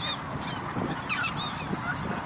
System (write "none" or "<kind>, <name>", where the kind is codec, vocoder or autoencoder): none